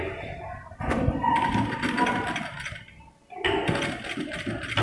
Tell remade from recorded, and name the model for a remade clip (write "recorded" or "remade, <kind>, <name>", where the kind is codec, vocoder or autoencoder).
recorded